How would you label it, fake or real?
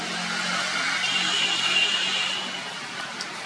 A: real